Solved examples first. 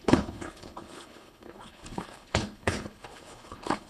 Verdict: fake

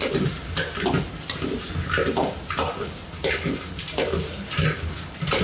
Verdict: real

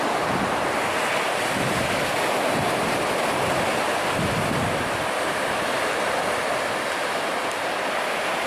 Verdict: real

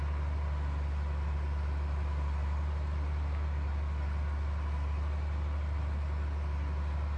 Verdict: real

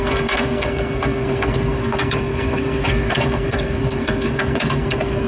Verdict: fake